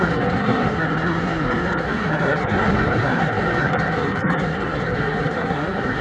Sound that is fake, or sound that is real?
fake